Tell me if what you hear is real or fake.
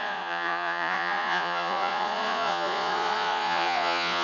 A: fake